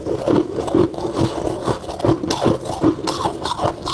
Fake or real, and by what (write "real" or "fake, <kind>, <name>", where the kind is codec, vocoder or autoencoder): real